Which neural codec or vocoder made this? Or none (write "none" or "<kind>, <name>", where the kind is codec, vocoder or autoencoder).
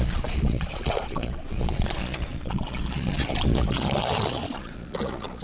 vocoder, Vocos